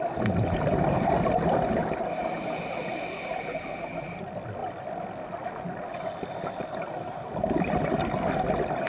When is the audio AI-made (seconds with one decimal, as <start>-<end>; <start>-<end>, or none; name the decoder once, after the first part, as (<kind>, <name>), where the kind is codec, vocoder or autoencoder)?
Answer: none